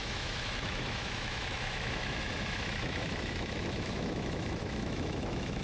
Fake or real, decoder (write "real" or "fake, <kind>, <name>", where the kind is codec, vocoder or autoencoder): fake, autoencoder, DAC-VAE